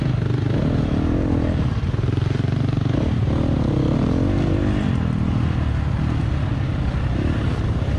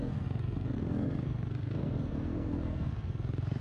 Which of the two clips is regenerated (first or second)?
second